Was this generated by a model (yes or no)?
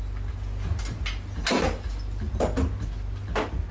no